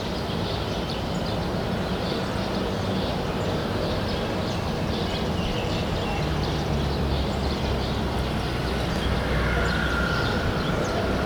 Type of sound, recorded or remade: recorded